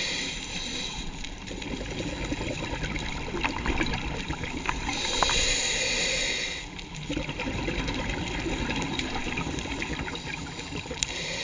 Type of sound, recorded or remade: recorded